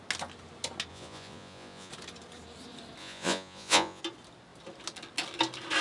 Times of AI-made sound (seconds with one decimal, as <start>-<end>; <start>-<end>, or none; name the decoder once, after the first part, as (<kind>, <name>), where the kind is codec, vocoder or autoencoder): 0.9-1.9 (vocoder, Vocos); 3.0-4.0